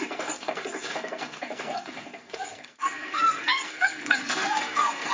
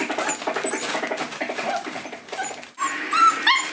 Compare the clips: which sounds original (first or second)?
second